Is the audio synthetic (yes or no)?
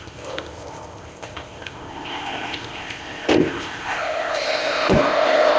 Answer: yes